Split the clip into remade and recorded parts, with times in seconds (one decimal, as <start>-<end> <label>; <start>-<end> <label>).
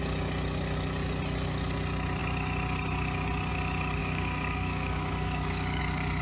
0.0-4.0 recorded; 4.0-5.8 remade; 5.8-6.2 recorded